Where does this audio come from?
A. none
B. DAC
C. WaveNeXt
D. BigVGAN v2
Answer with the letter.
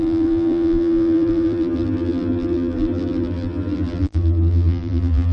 D